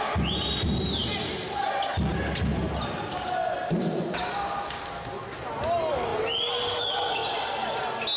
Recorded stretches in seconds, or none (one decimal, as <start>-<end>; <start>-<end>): 0.0-8.2

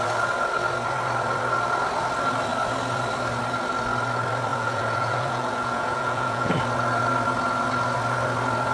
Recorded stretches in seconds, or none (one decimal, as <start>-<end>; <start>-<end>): 0.0-4.5; 6.6-8.7

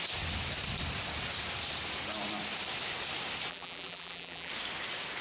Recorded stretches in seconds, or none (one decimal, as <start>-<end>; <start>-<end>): 0.0-3.5; 4.5-5.2

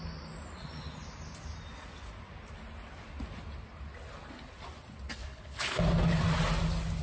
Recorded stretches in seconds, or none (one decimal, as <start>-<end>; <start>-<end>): 0.0-5.2; 5.8-7.0

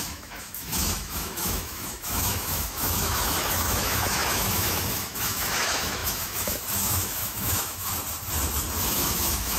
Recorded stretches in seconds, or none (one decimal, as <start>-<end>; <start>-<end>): 7.9-8.8